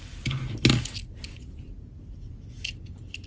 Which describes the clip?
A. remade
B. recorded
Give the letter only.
B